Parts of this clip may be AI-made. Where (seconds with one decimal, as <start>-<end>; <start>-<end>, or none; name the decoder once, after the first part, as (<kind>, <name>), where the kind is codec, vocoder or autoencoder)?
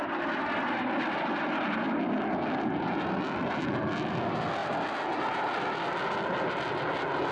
none